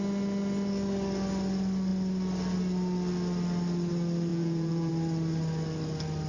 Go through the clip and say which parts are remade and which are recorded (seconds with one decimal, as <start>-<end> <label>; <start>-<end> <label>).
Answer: 0.0-4.3 recorded; 4.3-4.9 remade; 4.9-6.3 recorded